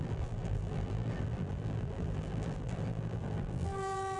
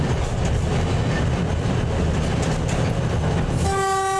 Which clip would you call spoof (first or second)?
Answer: first